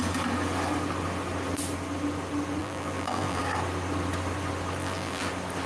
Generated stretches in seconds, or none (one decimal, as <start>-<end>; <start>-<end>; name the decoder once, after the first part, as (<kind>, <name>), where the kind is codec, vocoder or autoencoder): 2.6-3.4 (vocoder, BigVGAN v2); 4.8-5.3